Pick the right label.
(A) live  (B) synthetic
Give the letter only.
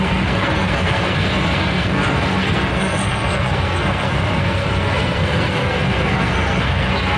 B